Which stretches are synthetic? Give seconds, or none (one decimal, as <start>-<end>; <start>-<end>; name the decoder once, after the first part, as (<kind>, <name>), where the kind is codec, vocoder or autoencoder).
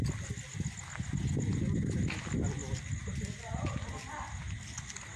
none